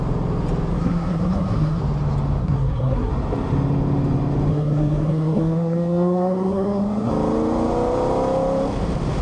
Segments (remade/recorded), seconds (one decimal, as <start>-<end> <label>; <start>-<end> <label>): 0.0-0.7 recorded; 0.7-1.8 remade; 1.8-2.4 recorded; 2.4-3.1 remade; 3.1-4.5 recorded; 4.5-7.1 remade; 7.1-9.2 recorded